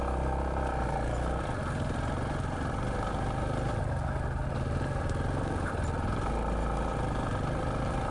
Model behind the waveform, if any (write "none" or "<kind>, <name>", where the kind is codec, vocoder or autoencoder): none